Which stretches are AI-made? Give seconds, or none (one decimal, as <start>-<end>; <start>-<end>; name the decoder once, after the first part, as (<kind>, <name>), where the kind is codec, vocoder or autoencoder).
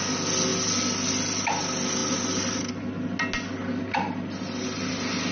none